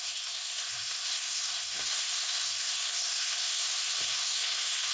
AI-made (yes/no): yes